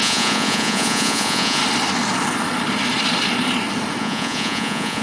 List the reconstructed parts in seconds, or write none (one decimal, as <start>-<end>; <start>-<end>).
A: 0.0-1.6; 4.0-5.0